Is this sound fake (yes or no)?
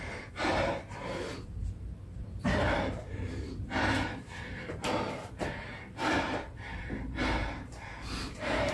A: yes